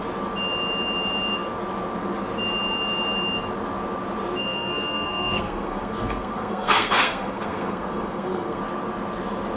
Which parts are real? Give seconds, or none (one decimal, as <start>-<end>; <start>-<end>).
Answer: 0.0-4.4; 8.6-9.6